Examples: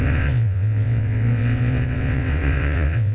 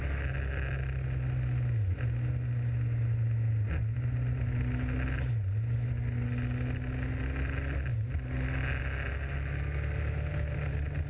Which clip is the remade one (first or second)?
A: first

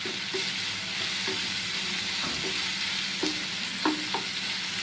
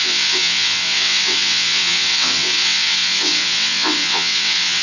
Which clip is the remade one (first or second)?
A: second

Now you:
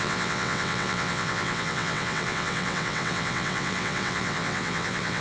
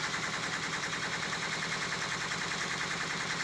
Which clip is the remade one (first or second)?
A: first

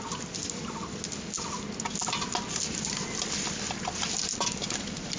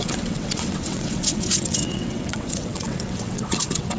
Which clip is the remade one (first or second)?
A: second